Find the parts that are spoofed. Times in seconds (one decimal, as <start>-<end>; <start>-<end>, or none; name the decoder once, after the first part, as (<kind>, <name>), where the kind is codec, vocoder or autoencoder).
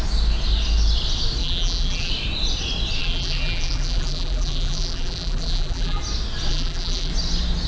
1.4-2.1 (vocoder, BigVGAN v2); 3.0-6.0; 6.5-7.1